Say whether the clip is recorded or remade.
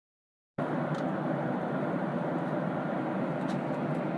remade